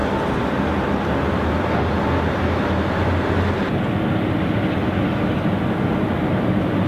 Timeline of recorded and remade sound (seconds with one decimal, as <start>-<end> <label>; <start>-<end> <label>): 0.0-6.9 recorded